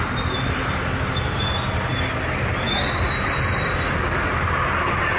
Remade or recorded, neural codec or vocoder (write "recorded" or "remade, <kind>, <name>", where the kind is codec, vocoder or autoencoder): recorded